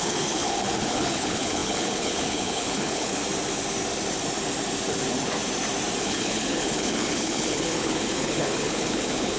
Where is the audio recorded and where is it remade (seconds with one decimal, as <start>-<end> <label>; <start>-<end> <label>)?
0.0-3.2 remade; 3.2-6.0 recorded; 6.0-9.4 remade